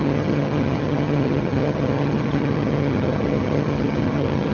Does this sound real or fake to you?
fake